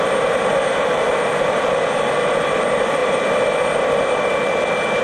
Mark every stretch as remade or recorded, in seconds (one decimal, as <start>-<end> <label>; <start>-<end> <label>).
0.0-5.0 recorded

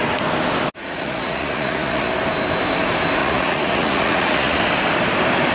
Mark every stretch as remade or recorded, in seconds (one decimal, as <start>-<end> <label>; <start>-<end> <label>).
0.0-0.8 recorded; 0.8-2.1 remade; 2.1-3.2 recorded; 3.2-4.6 remade; 4.6-5.5 recorded

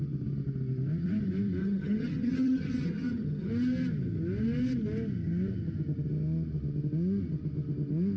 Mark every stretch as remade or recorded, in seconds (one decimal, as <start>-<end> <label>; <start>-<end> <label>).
0.0-1.6 recorded; 1.6-3.5 remade; 3.5-8.2 recorded

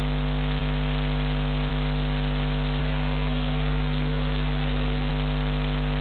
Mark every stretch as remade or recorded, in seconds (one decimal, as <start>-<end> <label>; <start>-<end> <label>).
0.0-2.8 recorded; 2.8-5.1 remade; 5.1-6.0 recorded

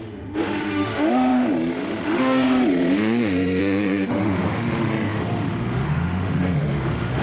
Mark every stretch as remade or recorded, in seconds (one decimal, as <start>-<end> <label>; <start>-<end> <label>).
0.0-7.2 remade

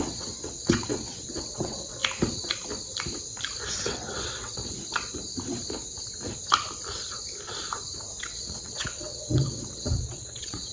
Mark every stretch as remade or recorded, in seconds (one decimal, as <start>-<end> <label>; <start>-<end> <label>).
0.0-2.0 remade; 2.0-3.7 recorded; 3.7-4.6 remade; 4.6-8.2 recorded; 8.2-10.7 remade

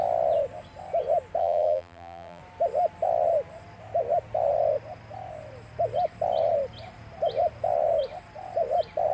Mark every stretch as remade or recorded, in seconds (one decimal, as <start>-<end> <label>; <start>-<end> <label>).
0.0-1.4 recorded; 1.4-2.4 remade; 2.4-9.1 recorded

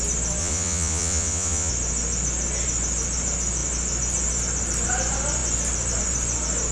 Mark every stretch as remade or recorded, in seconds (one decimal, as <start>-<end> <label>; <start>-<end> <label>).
0.0-0.4 recorded; 0.4-1.7 remade; 1.7-6.7 recorded